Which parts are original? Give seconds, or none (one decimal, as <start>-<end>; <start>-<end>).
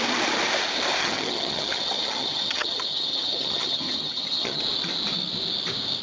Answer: 0.0-1.0; 4.6-6.0